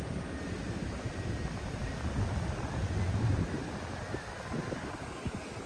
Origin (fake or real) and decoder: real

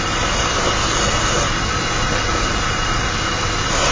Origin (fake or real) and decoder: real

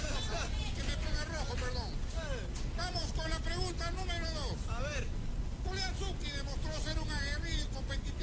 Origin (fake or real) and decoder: real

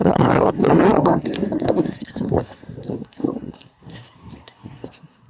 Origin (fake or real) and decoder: fake, codec, SNAC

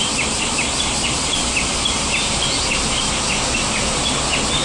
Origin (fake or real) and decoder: real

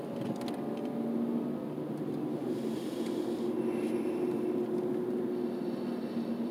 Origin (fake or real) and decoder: real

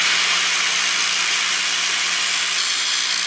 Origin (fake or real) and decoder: real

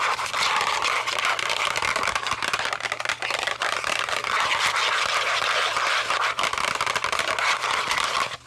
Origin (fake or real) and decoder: real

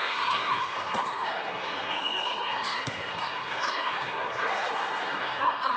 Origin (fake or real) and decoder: fake, codec, SNAC